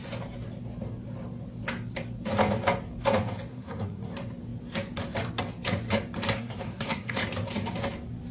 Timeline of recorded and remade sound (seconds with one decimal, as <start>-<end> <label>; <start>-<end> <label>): 0.0-3.5 recorded; 3.5-4.1 remade; 4.1-6.3 recorded; 6.3-7.2 remade; 7.2-8.3 recorded

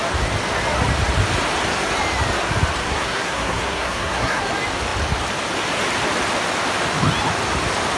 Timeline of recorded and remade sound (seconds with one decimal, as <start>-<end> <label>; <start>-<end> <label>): 0.0-2.8 recorded; 2.8-4.4 remade; 4.4-8.0 recorded

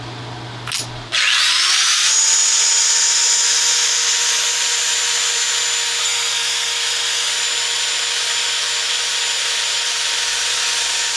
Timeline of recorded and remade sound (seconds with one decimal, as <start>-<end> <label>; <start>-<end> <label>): 0.0-6.0 recorded; 6.0-7.3 remade; 7.3-11.2 recorded

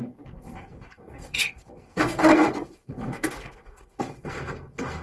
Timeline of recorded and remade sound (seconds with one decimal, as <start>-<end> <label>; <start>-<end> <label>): 0.0-5.0 remade

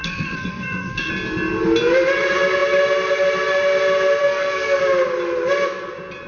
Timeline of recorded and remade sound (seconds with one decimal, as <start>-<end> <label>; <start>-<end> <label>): 0.0-1.1 remade; 1.1-4.2 recorded; 4.2-4.8 remade; 4.8-6.3 recorded

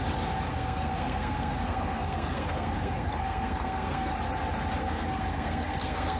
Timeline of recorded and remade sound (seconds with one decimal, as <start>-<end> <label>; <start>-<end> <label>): 0.0-0.5 recorded; 0.5-4.1 remade; 4.1-4.8 recorded; 4.8-6.2 remade

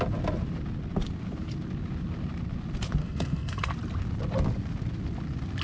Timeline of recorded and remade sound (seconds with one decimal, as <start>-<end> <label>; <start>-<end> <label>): 0.0-3.0 recorded; 3.0-3.7 remade; 3.7-5.6 recorded